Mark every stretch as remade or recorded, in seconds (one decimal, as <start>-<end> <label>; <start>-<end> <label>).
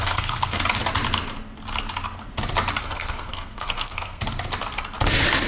0.0-0.6 remade; 0.6-2.8 recorded; 2.8-4.2 remade; 4.2-5.5 recorded